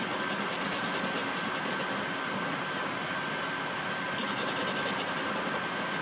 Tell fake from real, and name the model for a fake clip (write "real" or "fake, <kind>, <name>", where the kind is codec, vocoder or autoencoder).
real